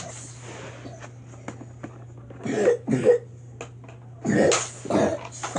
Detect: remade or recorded recorded